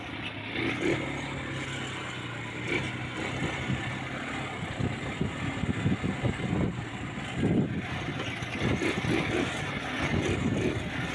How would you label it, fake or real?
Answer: real